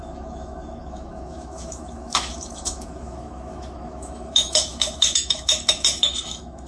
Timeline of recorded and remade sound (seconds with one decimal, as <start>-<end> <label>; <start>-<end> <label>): 0.0-6.7 remade

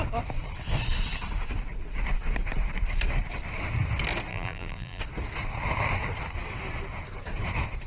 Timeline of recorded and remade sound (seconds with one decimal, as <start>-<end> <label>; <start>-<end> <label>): 0.0-4.3 recorded; 4.3-5.0 remade; 5.0-7.9 recorded

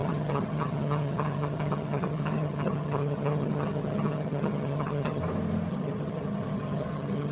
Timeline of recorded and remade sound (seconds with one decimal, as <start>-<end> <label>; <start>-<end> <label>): 0.0-5.2 remade; 5.2-5.7 recorded; 5.7-7.3 remade

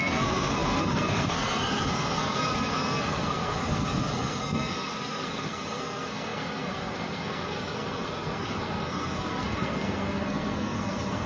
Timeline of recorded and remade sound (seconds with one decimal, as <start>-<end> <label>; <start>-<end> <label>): 0.0-11.3 remade

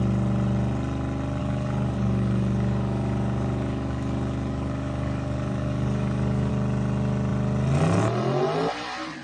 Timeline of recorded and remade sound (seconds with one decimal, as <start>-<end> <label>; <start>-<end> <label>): 0.0-1.4 recorded; 1.4-6.5 remade; 6.5-9.2 recorded